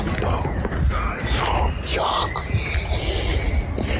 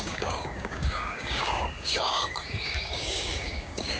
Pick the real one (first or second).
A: first